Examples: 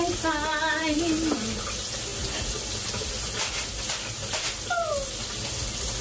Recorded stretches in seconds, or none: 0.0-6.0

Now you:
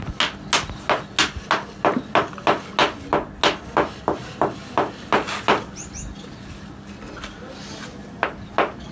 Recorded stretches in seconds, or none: 0.0-8.9

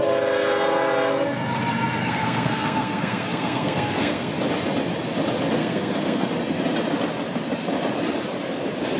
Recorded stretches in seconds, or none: 0.0-2.0; 4.3-5.6; 6.3-9.0

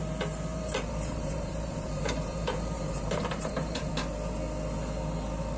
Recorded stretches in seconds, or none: 0.0-0.5; 3.9-5.6

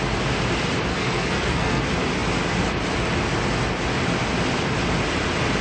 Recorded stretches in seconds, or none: 0.0-0.9; 1.8-5.6